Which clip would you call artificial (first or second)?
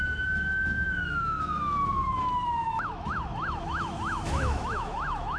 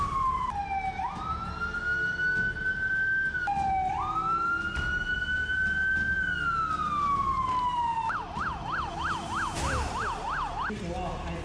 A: first